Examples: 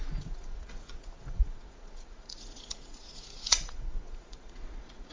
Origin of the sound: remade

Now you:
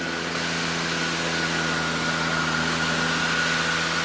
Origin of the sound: recorded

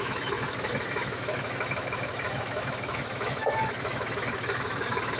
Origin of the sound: remade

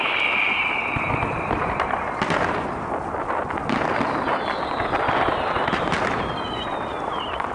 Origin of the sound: recorded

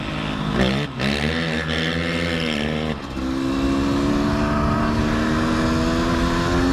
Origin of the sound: recorded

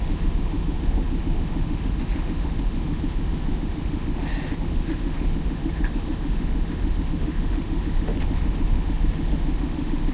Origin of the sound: remade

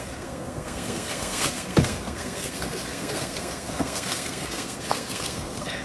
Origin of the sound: remade